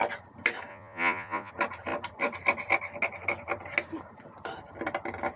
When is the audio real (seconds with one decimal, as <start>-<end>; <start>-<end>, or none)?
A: 0.0-0.7; 1.5-5.4